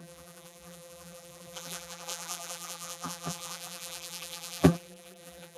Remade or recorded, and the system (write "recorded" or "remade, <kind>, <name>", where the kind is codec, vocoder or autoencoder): remade, vocoder, BigVGAN v2